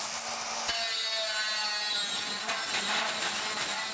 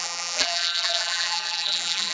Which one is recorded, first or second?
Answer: first